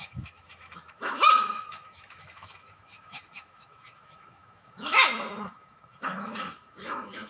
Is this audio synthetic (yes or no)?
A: yes